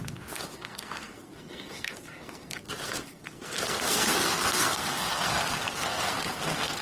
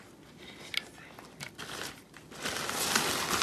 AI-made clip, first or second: first